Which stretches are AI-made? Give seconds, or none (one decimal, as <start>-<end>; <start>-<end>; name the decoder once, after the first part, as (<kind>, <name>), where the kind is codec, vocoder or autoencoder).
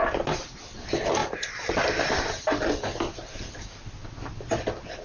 none